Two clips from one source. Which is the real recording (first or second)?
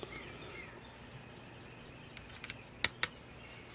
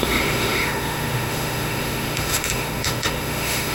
first